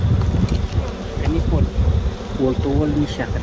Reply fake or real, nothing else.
real